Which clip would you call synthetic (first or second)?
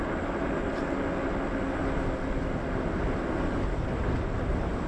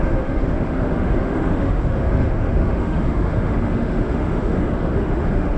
second